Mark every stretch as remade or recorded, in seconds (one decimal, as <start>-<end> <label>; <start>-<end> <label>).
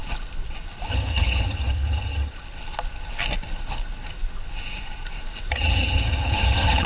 0.0-0.9 recorded; 0.9-2.3 remade; 2.3-5.5 recorded; 5.5-6.9 remade